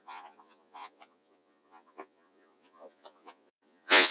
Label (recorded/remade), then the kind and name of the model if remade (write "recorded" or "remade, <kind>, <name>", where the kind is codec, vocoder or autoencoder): remade, vocoder, Vocos